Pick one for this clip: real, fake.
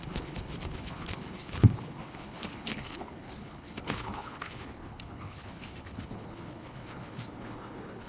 fake